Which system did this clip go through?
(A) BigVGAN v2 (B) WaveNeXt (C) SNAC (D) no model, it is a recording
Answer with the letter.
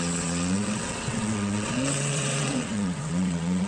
B